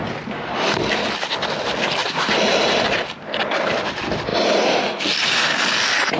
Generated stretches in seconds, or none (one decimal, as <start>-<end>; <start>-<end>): 2.0-2.5